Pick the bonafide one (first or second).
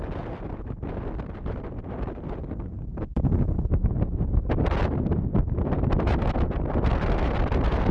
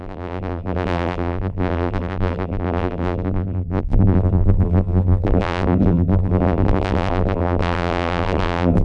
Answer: first